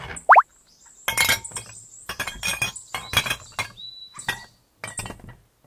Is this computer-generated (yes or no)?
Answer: no